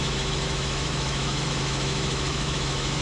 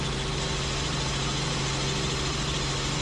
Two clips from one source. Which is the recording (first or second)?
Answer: second